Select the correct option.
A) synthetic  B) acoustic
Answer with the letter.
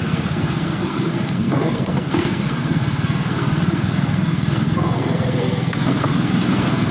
A